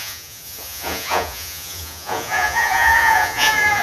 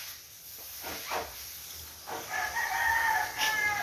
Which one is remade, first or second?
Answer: first